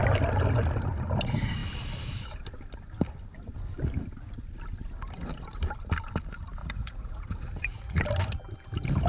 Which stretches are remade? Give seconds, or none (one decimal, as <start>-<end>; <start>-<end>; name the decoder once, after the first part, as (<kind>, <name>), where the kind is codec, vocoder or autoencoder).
6.6-8.0 (vocoder, Vocos)